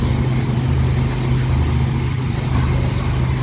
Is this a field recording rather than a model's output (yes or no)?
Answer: yes